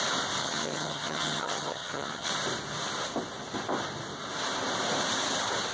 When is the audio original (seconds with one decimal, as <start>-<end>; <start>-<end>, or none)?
0.0-0.4; 2.3-5.7